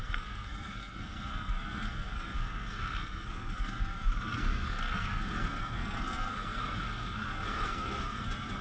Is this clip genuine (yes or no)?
no